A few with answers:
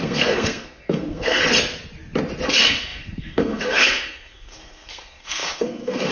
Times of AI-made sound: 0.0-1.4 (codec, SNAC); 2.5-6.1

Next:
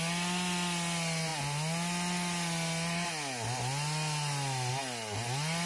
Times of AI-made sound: none